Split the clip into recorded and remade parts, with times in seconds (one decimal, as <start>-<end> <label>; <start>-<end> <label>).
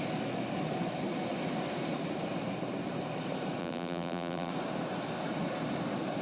0.0-3.6 recorded; 3.6-4.5 remade; 4.5-6.2 recorded